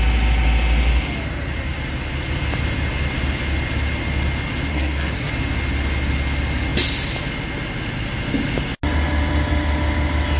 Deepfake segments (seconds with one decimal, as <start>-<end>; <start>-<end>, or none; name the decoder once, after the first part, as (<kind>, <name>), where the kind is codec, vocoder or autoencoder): 4.7-5.3 (codec, SNAC)